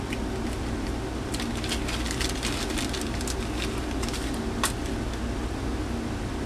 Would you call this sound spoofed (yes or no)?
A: no